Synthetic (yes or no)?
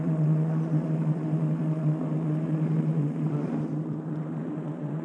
yes